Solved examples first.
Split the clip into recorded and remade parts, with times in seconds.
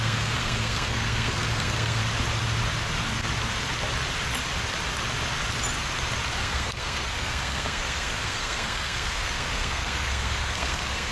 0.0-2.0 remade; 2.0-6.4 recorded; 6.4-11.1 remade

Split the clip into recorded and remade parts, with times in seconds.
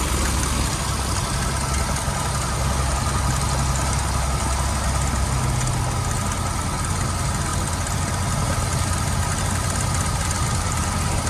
0.0-11.3 recorded